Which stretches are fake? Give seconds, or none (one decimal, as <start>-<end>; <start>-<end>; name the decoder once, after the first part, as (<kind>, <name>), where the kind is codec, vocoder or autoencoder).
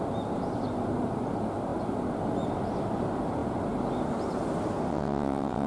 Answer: 4.9-5.7 (vocoder, WaveNeXt)